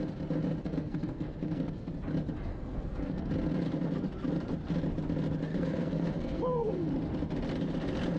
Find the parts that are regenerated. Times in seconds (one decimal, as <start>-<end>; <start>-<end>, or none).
0.6-1.9; 2.5-3.3; 5.5-6.9